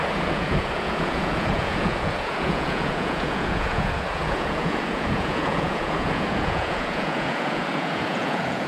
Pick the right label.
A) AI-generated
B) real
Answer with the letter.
A